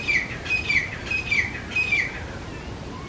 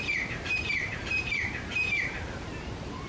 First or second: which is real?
first